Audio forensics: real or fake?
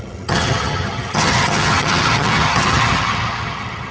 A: fake